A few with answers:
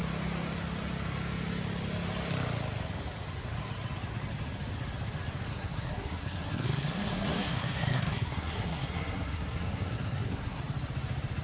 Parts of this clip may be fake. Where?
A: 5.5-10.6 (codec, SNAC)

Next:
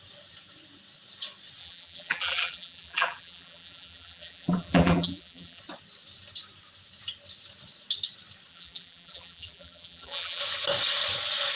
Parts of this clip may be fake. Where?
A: 1.6-5.6 (vocoder, BigVGAN v2); 8.5-10.4

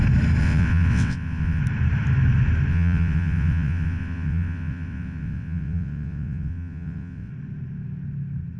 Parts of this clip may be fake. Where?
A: 0.4-1.6 (vocoder, WaveNeXt); 2.7-7.3

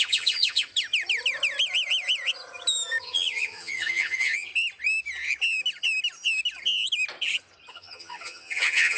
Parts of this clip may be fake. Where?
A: 0.0-0.7 (vocoder, HiFi-GAN); 3.0-4.5; 7.7-9.0